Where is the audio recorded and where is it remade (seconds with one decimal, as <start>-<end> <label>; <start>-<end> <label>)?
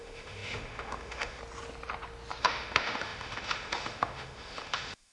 0.0-1.4 remade; 1.4-2.4 recorded; 2.4-5.1 remade